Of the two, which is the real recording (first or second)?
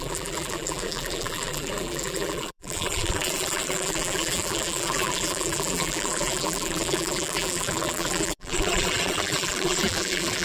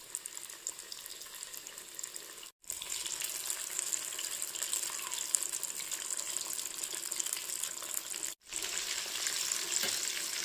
second